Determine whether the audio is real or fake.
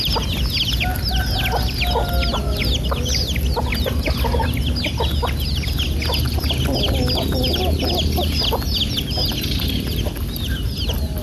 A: real